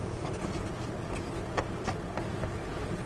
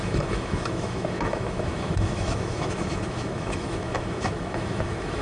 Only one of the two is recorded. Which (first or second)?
first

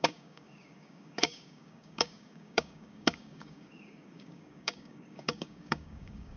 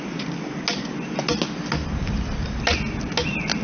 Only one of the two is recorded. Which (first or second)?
second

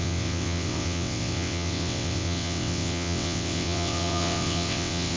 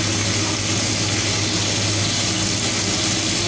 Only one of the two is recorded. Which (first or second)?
second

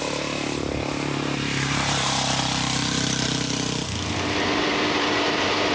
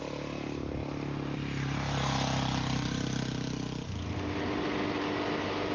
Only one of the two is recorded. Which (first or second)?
second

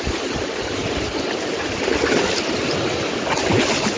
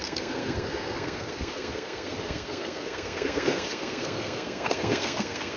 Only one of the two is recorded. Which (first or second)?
first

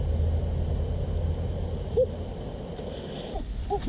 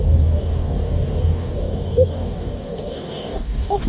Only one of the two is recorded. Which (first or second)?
first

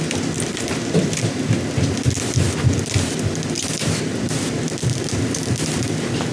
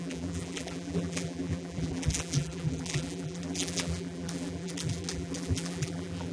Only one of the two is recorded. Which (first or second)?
first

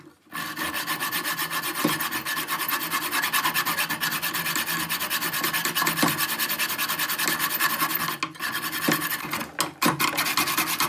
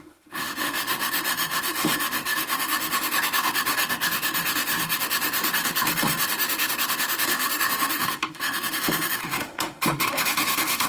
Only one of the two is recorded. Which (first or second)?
first